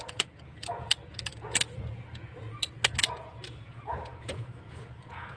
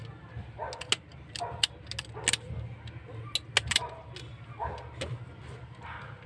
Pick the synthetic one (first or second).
first